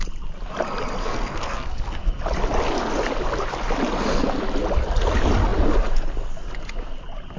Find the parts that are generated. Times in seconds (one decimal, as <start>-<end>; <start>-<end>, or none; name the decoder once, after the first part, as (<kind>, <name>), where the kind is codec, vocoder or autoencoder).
1.0-2.2 (codec, SNAC)

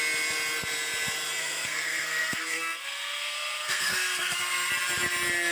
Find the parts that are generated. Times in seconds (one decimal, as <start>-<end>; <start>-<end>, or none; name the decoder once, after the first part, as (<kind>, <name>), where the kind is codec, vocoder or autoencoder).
1.4-4.7 (codec, SNAC)

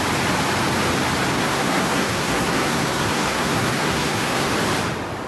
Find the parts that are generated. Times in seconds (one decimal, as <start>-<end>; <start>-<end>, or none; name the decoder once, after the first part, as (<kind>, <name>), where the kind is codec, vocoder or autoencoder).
1.3-4.5 (codec, SNAC)

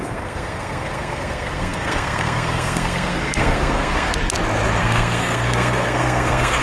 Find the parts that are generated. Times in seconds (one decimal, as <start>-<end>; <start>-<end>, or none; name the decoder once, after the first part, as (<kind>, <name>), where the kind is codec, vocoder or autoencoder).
0.0-4.1 (codec, SNAC); 4.8-6.6

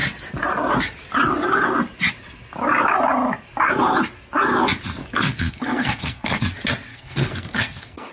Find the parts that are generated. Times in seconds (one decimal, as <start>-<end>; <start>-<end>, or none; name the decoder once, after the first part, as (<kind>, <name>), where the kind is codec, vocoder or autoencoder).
5.0-6.4 (codec, SNAC); 6.9-8.1